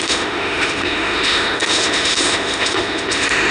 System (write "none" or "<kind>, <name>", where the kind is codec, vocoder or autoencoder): autoencoder, DAC-VAE